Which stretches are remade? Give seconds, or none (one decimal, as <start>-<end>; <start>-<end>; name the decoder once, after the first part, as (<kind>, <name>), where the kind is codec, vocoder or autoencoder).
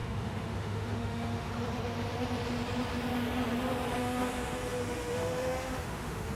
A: 0.0-1.5 (autoencoder, DAC-VAE); 4.0-6.3